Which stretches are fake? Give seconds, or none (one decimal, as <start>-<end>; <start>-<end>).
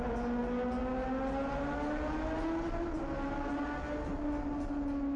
none